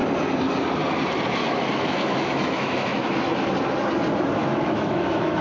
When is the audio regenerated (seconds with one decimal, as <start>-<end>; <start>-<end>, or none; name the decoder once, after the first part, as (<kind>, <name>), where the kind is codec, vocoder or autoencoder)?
1.4-3.5 (autoencoder, DAC-VAE); 4.4-5.4

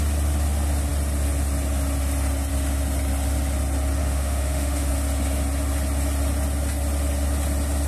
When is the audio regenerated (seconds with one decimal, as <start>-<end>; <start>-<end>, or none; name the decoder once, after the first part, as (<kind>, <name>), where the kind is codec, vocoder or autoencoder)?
4.0-4.9 (autoencoder, DAC-VAE)

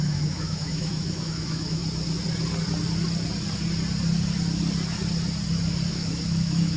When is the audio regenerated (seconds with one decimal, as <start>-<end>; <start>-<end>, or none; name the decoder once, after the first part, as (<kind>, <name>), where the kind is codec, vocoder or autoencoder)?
0.0-1.8 (autoencoder, DAC-VAE); 5.9-6.8

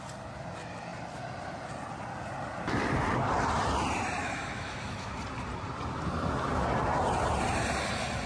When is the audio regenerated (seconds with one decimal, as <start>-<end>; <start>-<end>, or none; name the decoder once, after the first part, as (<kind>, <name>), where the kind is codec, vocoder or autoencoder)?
4.2-5.1 (autoencoder, DAC-VAE)